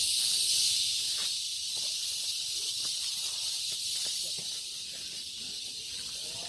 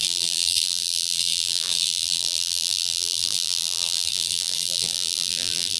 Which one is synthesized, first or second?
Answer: second